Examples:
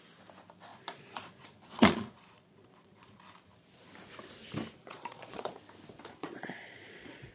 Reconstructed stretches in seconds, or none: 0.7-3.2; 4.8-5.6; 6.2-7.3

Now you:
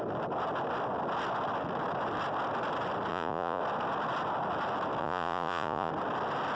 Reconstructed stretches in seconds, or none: 3.1-3.6; 5.0-5.9

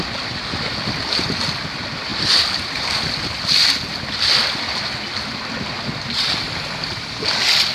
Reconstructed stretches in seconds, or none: none

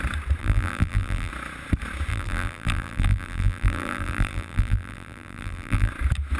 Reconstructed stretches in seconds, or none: 0.4-1.3; 2.1-5.9

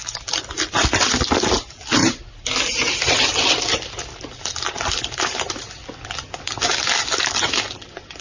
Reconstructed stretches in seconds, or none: none